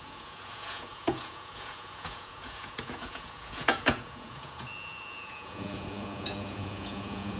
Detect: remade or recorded remade